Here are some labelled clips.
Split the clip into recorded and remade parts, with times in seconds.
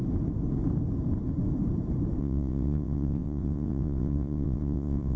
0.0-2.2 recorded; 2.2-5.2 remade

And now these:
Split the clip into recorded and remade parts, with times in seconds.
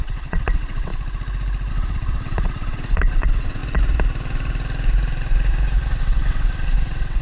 0.0-0.9 remade; 0.9-1.7 recorded; 1.7-3.6 remade; 3.6-6.0 recorded; 6.0-7.2 remade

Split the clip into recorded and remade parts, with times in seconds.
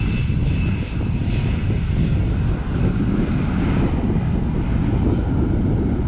0.0-6.1 recorded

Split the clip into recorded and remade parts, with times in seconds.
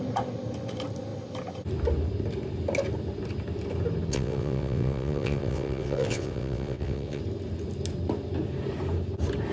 0.0-4.1 recorded; 4.1-7.2 remade; 7.2-9.5 recorded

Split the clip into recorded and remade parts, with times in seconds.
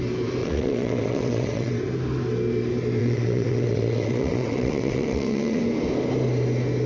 0.0-0.4 recorded; 0.4-1.7 remade; 1.7-3.0 recorded; 3.0-5.6 remade; 5.6-6.9 recorded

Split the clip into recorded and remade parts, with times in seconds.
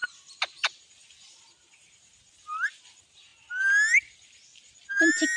0.0-5.4 recorded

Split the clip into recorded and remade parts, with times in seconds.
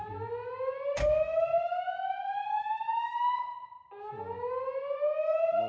0.0-5.7 recorded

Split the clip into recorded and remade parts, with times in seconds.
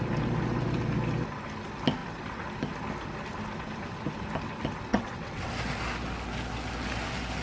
0.0-4.9 recorded; 4.9-5.5 remade; 5.5-7.4 recorded